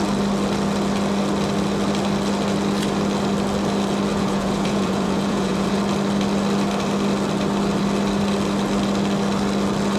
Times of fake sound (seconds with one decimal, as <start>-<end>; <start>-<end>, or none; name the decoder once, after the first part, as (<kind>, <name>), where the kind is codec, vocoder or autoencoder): 4.1-5.8 (vocoder, Vocos)